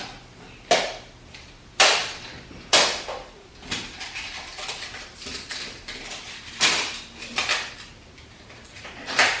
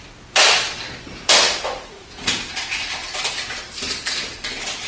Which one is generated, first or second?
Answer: first